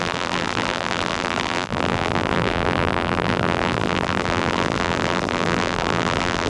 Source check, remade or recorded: remade